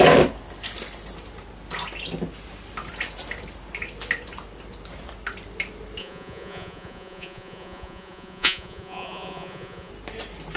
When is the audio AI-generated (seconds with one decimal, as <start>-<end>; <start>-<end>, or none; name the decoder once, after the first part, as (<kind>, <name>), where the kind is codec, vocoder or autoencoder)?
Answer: 6.0-9.9 (vocoder, Vocos)